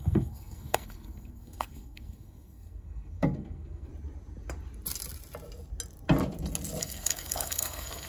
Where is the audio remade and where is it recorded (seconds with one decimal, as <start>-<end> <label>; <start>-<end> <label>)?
0.0-3.9 remade; 3.9-6.8 recorded; 6.8-8.1 remade